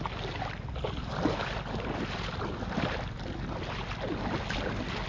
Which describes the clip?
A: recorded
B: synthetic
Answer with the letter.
A